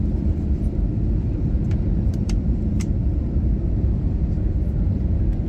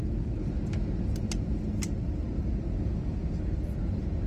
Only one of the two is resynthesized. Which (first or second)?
first